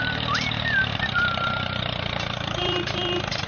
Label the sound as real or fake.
fake